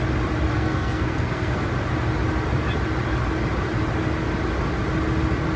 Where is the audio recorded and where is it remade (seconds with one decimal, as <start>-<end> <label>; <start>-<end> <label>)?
0.0-0.5 recorded; 0.5-1.7 remade; 1.7-5.6 recorded